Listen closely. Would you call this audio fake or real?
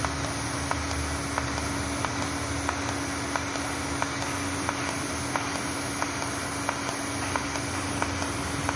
real